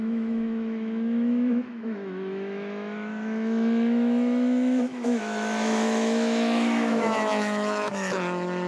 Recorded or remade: remade